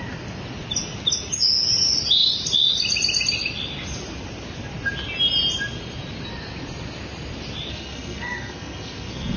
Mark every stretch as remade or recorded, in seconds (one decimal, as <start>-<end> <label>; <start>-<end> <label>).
0.0-7.7 recorded; 7.7-9.4 remade